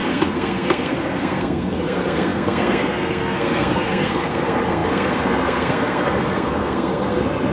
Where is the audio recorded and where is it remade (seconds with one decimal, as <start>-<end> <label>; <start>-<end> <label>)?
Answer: 0.0-7.5 remade